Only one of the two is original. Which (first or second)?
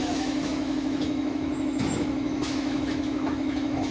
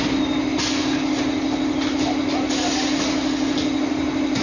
second